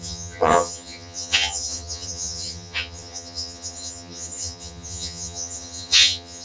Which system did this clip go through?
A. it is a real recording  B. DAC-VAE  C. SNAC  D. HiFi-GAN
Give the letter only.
D